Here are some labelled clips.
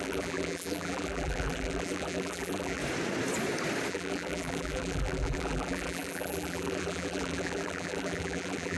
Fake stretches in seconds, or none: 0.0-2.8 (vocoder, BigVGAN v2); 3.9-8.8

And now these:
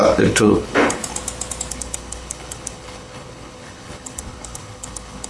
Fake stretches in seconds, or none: 0.0-1.0 (codec, HILCodec); 1.7-5.3

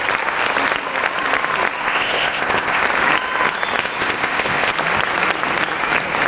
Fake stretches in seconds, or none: 1.8-2.8 (codec, ZipCodec); 3.8-4.7

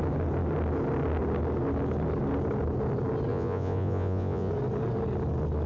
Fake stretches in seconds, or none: 3.3-4.5 (vocoder, Vocos)

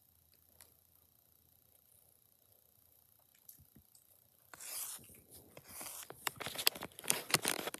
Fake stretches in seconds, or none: none

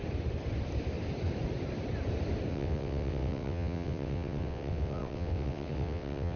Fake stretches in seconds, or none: 2.5-6.4 (vocoder, WaveNeXt)